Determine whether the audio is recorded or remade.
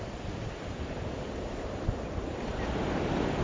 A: remade